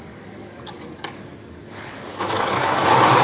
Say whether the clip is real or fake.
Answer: fake